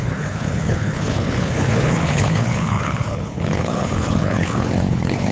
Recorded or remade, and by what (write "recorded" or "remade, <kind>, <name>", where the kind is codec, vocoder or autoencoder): remade, codec, HILCodec